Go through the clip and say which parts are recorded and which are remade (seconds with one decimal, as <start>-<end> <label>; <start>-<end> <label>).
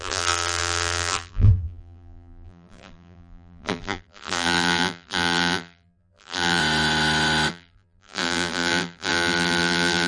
0.0-6.6 remade; 6.6-7.5 recorded; 7.5-10.1 remade